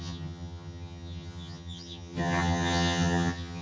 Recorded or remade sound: remade